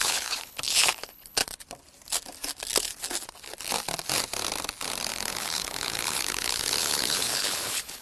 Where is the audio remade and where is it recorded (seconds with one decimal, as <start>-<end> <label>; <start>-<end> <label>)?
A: 0.0-1.4 remade; 1.4-5.1 recorded; 5.1-8.0 remade